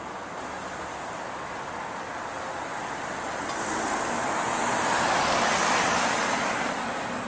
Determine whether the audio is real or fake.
real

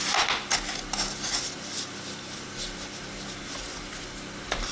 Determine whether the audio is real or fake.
real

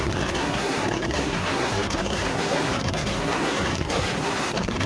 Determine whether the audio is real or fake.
fake